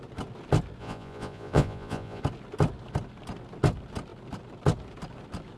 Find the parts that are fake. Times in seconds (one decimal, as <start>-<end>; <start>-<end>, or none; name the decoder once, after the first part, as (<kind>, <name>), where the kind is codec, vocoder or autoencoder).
0.8-2.2 (vocoder, Vocos)